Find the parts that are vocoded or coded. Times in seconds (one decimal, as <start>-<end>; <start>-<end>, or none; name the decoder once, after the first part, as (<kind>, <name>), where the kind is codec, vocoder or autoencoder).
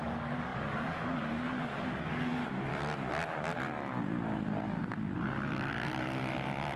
0.0-2.7 (codec, DAC)